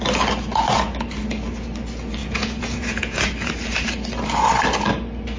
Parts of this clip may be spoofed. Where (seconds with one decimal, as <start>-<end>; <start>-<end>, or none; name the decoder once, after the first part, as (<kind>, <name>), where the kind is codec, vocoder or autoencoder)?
2.2-3.3 (vocoder, Vocos)